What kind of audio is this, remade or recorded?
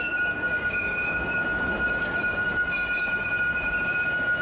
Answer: recorded